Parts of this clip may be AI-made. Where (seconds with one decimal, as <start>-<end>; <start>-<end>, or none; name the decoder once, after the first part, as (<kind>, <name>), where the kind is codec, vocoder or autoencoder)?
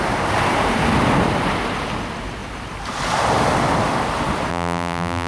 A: 4.5-5.3 (vocoder, BigVGAN v2)